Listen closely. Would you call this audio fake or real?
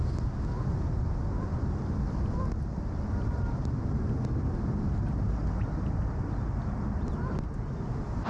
real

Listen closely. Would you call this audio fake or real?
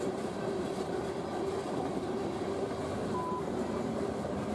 real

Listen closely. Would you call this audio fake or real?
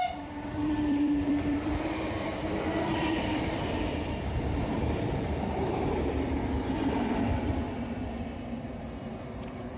fake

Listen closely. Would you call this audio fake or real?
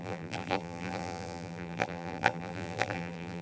fake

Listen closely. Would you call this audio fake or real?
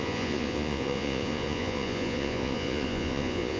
fake